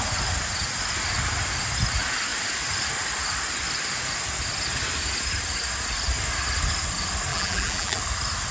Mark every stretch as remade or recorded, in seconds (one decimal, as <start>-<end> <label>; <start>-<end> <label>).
0.0-7.3 recorded; 7.3-8.0 remade; 8.0-8.5 recorded